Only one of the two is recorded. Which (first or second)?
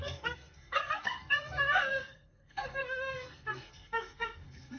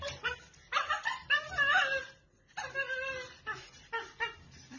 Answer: second